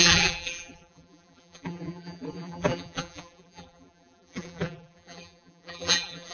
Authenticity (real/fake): fake